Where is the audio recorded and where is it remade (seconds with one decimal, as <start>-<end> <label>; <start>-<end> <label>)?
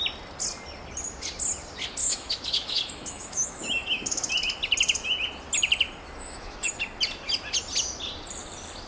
0.0-2.0 recorded; 2.0-4.3 remade; 4.3-6.2 recorded; 6.2-6.7 remade; 6.7-8.9 recorded